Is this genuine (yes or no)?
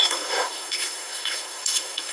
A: no